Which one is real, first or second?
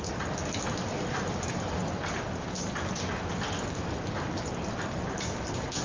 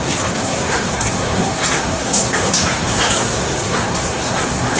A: first